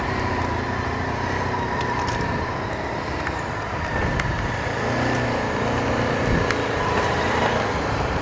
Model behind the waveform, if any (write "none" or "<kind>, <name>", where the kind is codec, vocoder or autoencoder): none